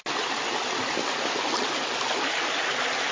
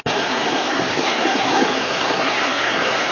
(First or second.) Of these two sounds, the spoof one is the second